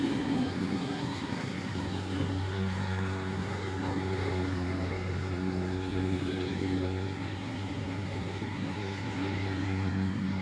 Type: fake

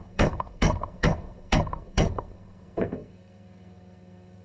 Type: fake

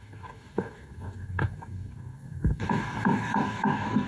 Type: fake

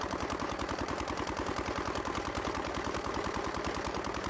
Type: real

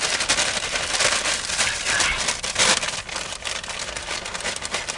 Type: real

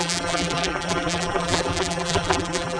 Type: fake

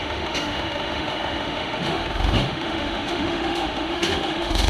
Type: fake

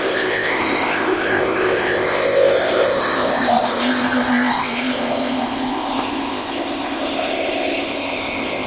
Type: fake